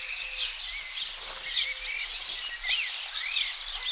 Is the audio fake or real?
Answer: real